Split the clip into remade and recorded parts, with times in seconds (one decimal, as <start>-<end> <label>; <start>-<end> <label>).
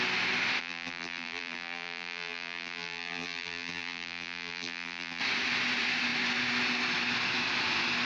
0.0-0.6 recorded; 0.6-5.2 remade; 5.2-8.0 recorded